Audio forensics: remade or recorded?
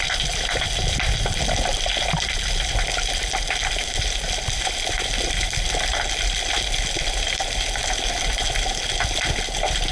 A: recorded